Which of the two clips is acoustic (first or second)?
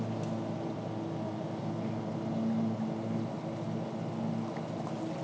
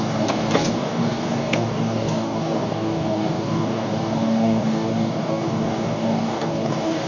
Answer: first